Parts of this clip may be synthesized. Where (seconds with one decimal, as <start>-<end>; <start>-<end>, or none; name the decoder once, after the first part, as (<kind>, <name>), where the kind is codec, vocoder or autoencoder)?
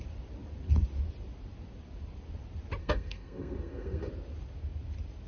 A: 2.8-4.1 (codec, SNAC)